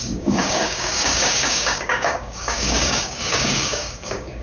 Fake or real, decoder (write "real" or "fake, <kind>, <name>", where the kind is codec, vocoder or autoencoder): fake, codec, DAC